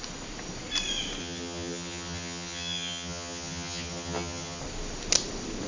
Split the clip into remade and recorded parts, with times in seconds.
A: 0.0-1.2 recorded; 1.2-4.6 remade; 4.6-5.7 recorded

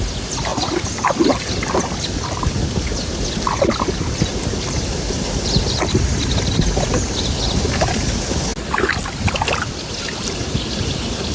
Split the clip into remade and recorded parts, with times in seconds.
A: 0.0-11.3 recorded

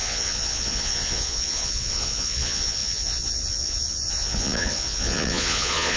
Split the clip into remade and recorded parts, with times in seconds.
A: 0.0-6.0 remade

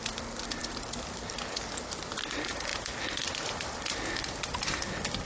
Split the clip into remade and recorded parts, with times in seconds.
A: 0.0-5.3 recorded

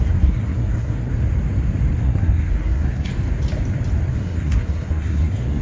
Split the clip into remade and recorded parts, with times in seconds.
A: 0.0-1.1 remade; 1.1-2.0 recorded; 2.0-3.1 remade; 3.1-4.1 recorded; 4.1-5.6 remade

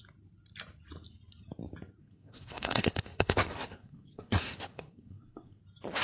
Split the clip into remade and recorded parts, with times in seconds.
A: 0.0-2.0 recorded; 2.0-5.6 remade; 5.6-6.0 recorded

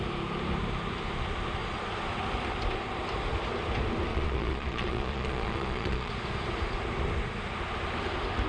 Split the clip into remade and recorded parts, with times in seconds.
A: 0.0-4.1 recorded; 4.1-6.1 remade; 6.1-8.5 recorded